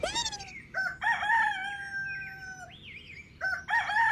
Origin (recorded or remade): recorded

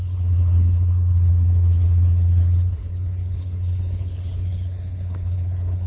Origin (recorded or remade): remade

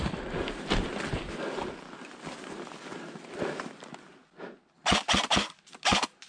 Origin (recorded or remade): recorded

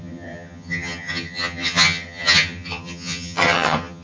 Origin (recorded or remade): remade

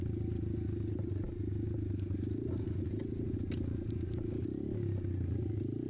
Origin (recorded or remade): recorded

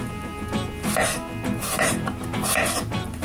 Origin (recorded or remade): recorded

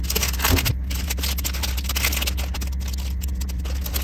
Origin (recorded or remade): recorded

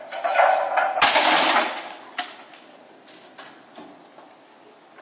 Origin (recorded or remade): recorded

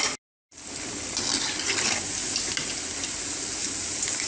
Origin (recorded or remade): recorded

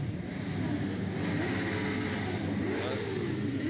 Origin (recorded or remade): recorded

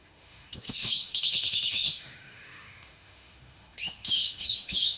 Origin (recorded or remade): remade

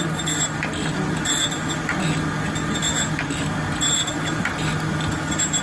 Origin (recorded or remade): recorded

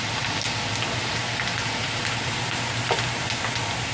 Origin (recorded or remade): recorded